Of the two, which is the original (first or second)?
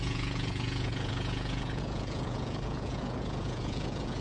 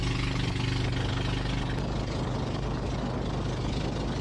second